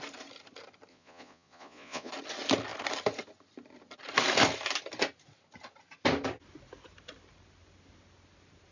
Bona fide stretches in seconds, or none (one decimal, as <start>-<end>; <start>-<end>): 0.0-0.9; 2.1-8.7